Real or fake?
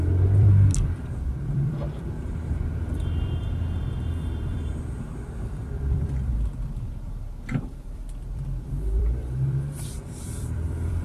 fake